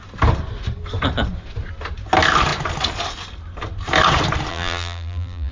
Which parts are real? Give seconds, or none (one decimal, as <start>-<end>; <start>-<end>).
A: 0.0-4.5